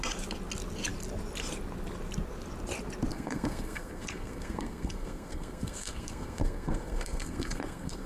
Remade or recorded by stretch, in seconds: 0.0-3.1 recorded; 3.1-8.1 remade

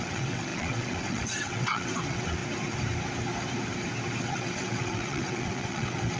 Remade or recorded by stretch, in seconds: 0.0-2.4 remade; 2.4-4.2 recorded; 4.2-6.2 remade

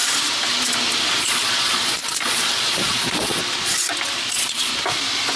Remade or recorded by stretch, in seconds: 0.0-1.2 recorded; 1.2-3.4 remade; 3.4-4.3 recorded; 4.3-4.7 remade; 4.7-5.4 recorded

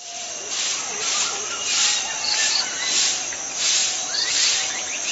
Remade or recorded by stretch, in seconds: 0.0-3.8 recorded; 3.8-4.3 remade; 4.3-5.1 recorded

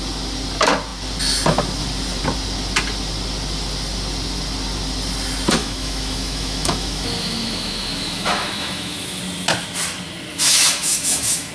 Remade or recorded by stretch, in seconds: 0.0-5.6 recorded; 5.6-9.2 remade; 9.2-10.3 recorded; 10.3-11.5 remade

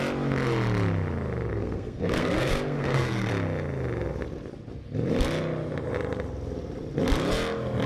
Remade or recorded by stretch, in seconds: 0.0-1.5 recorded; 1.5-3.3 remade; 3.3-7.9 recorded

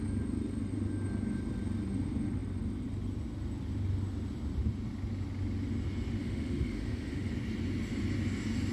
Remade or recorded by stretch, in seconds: 0.0-6.2 recorded; 6.2-7.3 remade; 7.3-8.7 recorded